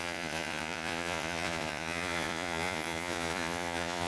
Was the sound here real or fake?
fake